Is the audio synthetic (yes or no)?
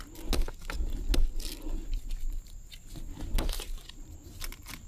no